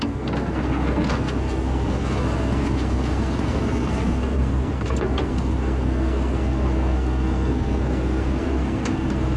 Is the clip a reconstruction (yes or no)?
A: yes